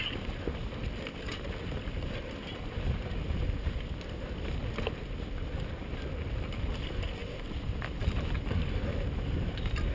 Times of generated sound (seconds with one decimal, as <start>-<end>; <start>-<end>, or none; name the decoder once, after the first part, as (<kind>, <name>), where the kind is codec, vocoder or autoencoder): none